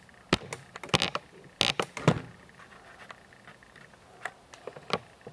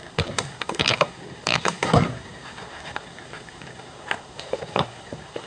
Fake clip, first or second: second